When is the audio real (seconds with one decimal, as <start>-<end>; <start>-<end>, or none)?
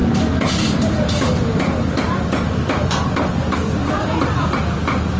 0.0-2.3